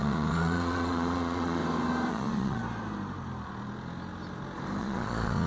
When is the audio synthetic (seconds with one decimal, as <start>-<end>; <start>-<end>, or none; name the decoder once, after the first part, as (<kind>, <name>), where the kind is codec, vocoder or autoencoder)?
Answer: 0.0-1.6 (vocoder, Vocos); 2.1-2.6; 4.8-5.5